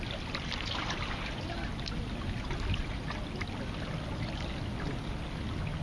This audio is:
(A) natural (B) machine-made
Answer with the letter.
A